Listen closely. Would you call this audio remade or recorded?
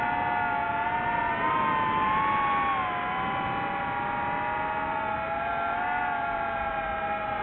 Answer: recorded